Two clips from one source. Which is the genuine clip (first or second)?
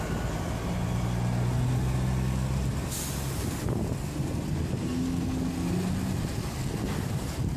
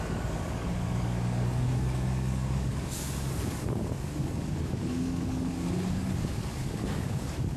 first